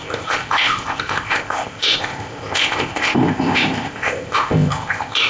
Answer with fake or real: fake